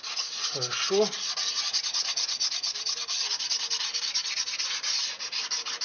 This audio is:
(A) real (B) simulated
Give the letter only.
A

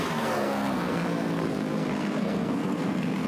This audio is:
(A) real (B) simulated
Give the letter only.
B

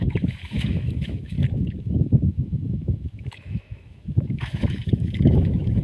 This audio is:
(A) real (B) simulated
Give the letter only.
B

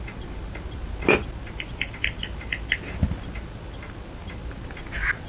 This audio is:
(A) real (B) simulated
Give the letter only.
A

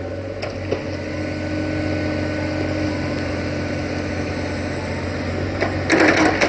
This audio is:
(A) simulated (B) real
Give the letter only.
B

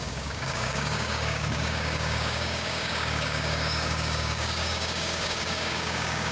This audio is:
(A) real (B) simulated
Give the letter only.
B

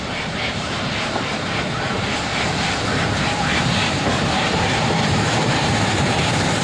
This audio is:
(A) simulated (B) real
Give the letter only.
A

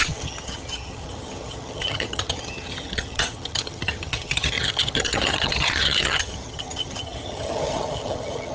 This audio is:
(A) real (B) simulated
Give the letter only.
B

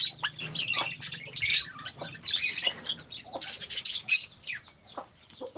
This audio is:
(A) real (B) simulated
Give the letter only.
A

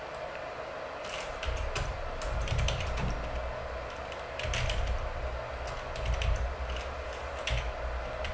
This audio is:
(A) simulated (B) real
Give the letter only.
B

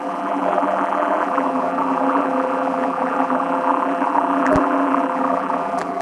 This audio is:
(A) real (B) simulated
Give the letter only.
B